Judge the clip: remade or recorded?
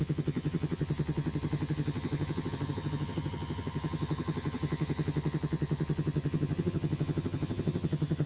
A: remade